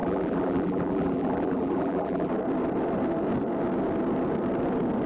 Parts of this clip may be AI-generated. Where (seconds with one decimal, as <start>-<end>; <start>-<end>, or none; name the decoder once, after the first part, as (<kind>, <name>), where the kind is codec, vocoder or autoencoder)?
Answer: 0.0-2.3 (vocoder, BigVGAN v2)